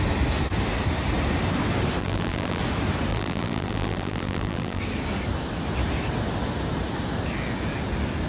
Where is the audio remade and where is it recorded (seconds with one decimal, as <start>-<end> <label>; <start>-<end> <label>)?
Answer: 0.0-2.0 recorded; 2.0-2.6 remade; 2.6-3.1 recorded; 3.1-4.8 remade; 4.8-8.3 recorded